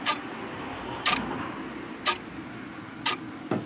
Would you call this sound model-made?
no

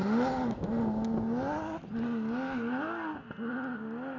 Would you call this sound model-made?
no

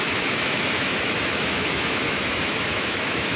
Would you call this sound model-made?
yes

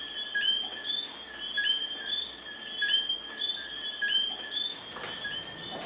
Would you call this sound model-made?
no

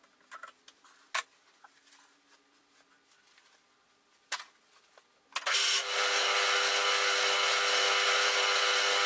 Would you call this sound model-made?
no